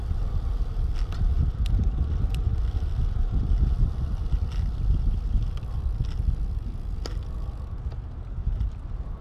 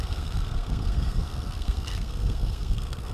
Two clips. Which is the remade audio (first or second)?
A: second